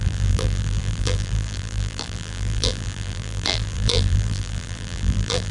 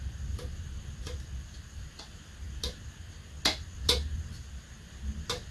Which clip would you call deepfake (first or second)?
first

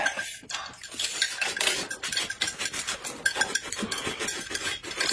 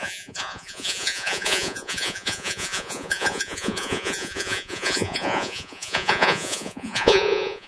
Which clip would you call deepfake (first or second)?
second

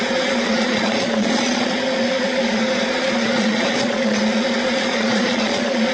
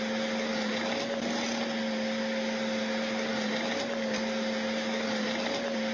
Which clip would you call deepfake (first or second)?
first